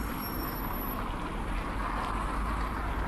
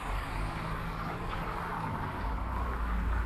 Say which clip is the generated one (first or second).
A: second